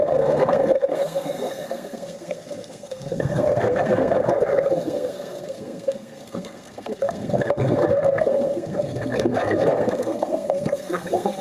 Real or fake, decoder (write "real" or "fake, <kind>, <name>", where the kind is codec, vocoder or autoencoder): fake, codec, SNAC